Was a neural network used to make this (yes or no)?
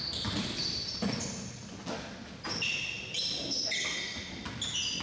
no